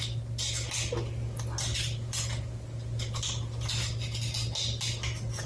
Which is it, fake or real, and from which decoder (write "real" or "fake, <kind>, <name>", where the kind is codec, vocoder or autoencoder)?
real